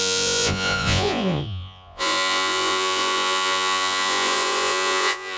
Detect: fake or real fake